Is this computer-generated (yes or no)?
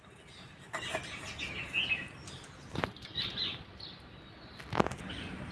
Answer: no